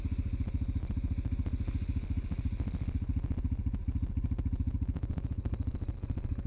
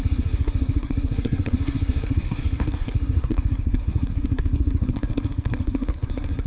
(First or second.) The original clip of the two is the first